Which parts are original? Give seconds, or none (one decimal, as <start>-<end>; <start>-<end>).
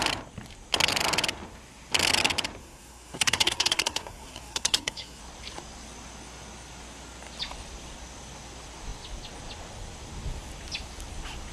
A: 0.0-2.6; 5.2-11.5